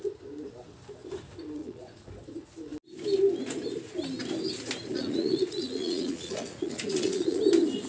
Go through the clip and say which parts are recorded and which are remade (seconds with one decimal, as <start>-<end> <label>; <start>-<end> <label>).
0.0-1.6 recorded; 1.6-2.1 remade; 2.1-4.9 recorded; 4.9-7.4 remade; 7.4-7.9 recorded